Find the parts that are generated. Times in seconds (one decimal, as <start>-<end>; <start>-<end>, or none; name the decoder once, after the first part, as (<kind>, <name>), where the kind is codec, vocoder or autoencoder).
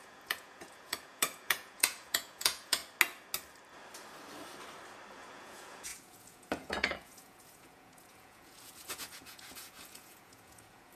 0.0-2.8 (vocoder, Vocos); 5.1-11.0